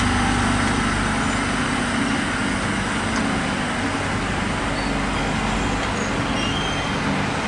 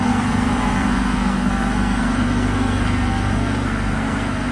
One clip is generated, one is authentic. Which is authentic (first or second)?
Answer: first